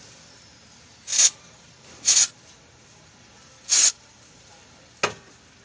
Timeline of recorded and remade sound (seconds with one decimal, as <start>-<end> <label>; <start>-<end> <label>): 0.0-1.1 recorded; 1.1-4.5 remade; 4.5-5.6 recorded